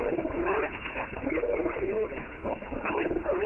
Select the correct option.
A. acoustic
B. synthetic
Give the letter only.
B